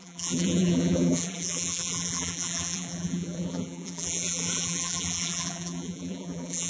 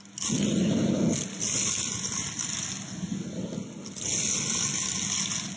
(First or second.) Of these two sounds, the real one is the second